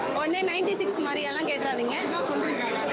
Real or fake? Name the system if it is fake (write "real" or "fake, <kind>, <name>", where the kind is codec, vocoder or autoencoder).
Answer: fake, codec, DAC